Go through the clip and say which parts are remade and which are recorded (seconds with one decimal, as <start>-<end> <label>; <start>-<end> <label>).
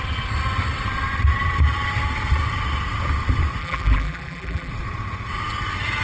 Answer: 0.0-3.6 recorded; 3.6-4.7 remade; 4.7-6.0 recorded